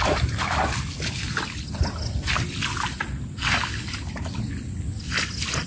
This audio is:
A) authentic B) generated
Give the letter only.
A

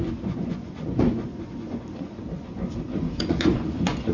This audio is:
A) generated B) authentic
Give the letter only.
A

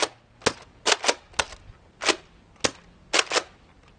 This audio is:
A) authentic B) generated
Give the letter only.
A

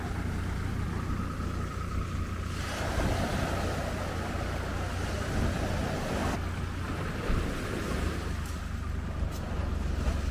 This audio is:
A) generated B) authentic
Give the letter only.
B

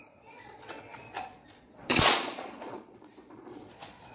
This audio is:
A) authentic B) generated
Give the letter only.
B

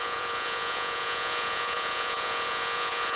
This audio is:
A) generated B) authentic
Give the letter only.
A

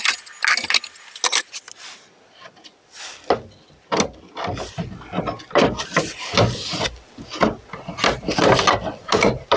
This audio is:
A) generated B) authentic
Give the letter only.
B